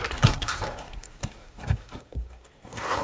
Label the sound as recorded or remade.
remade